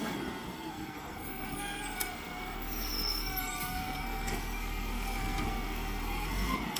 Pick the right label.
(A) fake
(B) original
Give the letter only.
A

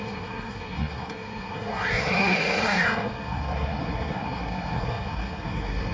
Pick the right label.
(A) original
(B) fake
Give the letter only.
B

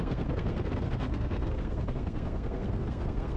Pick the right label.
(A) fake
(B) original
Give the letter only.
A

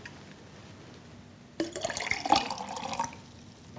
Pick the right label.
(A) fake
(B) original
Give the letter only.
B